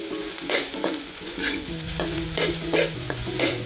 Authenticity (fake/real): fake